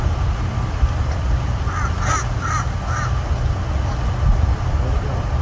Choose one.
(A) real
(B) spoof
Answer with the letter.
A